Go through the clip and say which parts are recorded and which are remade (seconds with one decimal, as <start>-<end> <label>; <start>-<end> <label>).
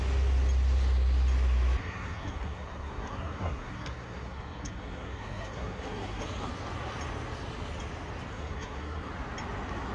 0.0-1.8 recorded; 1.8-6.2 remade; 6.2-8.3 recorded; 8.3-9.1 remade; 9.1-9.9 recorded